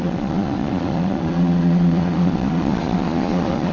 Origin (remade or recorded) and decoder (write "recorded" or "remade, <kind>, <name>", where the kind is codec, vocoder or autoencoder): remade, vocoder, Vocos